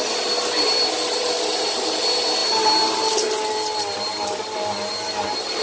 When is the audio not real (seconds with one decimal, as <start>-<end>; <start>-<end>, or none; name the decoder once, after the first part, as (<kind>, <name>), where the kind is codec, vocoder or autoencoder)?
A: none